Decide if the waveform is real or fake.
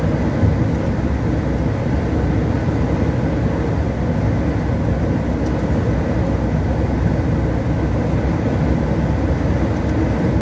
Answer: real